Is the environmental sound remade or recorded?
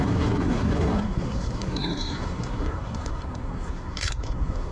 remade